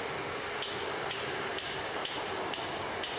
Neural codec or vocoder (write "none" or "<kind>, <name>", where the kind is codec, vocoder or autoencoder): vocoder, BigVGAN v2